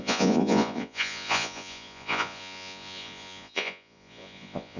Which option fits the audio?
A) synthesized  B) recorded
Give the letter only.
A